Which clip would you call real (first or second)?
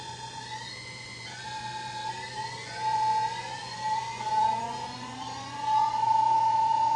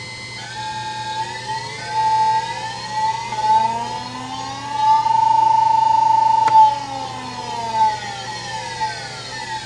second